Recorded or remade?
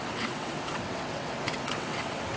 remade